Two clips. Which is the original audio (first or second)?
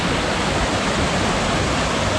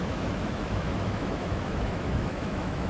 first